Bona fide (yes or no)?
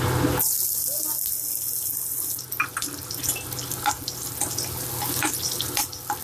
yes